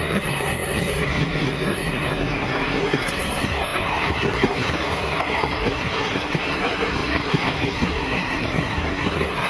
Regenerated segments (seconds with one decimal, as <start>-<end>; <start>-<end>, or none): 0.0-9.5